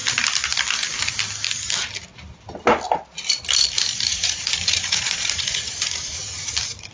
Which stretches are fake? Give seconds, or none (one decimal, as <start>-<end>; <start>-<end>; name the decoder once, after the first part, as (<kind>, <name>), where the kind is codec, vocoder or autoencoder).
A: 4.1-6.5 (vocoder, Vocos)